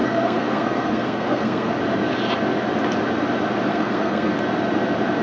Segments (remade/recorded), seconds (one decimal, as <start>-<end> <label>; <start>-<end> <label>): 0.0-1.7 remade; 1.7-3.7 recorded; 3.7-4.3 remade; 4.3-5.2 recorded